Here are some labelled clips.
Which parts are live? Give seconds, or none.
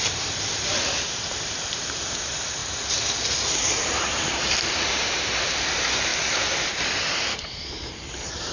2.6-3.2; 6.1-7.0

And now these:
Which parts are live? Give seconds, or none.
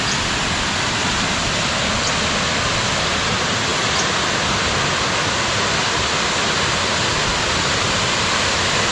0.0-8.9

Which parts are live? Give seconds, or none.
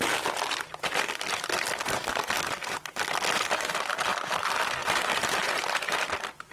0.0-4.8; 5.9-6.5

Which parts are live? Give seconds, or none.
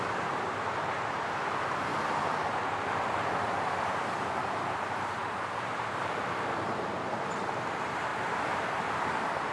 1.9-3.2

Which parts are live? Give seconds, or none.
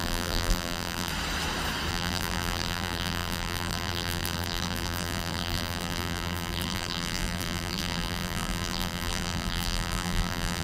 1.1-1.9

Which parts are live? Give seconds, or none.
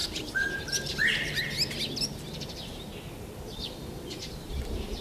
1.4-2.0; 2.9-4.2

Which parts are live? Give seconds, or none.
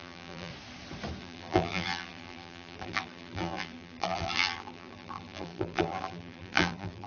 0.5-1.2